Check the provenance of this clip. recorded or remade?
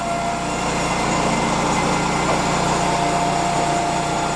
recorded